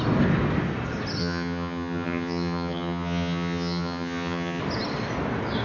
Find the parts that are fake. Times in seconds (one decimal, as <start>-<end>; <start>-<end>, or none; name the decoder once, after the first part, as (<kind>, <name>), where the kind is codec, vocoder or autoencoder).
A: 1.2-4.6 (vocoder, HiFi-GAN)